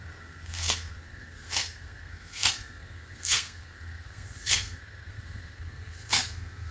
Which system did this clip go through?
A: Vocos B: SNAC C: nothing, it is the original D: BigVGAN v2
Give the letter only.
B